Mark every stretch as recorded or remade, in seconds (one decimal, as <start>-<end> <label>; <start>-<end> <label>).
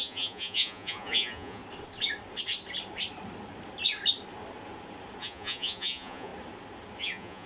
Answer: 0.0-1.6 remade; 1.6-5.2 recorded; 5.2-6.3 remade; 6.3-7.0 recorded; 7.0-7.5 remade